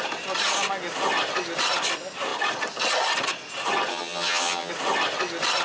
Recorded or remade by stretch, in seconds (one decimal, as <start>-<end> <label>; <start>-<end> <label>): 0.0-3.9 recorded; 3.9-4.7 remade; 4.7-5.6 recorded